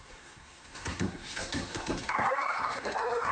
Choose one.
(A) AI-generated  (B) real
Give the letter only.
A